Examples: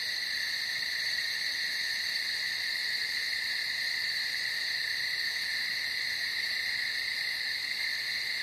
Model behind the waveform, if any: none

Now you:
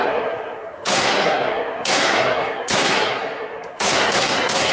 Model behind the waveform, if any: codec, SNAC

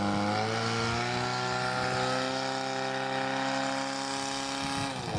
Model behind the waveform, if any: none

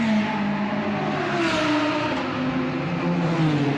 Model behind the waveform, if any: none